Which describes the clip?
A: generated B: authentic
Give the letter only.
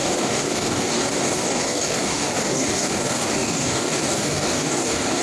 A